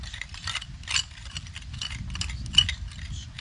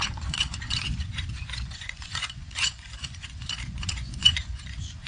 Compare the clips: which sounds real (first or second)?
first